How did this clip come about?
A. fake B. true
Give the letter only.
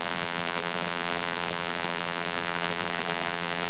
A